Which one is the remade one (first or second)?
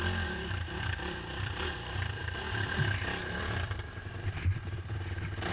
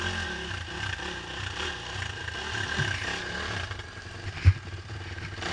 first